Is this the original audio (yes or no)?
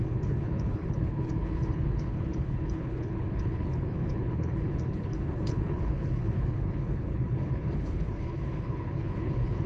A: no